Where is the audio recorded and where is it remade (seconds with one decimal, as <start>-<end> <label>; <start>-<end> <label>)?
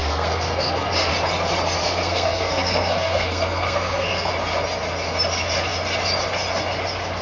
0.0-1.1 remade; 1.1-1.8 recorded; 1.8-4.3 remade; 4.3-7.2 recorded